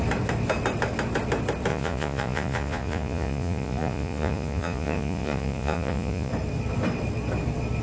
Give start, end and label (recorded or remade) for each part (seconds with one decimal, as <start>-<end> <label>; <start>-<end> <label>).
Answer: 0.0-1.7 recorded; 1.7-6.3 remade; 6.3-7.8 recorded